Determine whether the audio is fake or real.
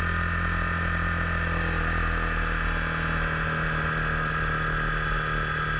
real